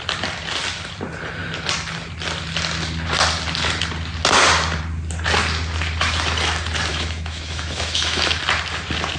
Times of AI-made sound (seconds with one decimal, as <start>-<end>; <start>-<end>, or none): 6.9-8.4